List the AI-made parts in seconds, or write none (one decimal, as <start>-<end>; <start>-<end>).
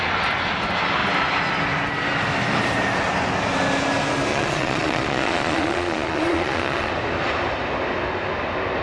4.3-6.9